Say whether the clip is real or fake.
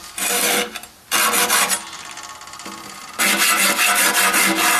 real